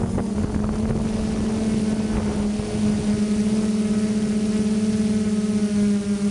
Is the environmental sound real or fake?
real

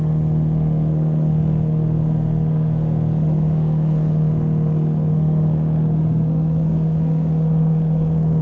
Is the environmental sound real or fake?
fake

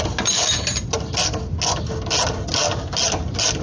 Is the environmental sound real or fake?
real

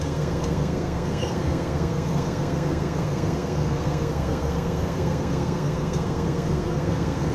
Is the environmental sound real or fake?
fake